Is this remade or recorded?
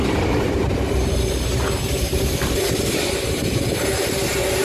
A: remade